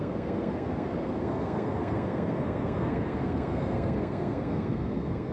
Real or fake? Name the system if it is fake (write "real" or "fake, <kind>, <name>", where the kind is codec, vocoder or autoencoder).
fake, codec, SNAC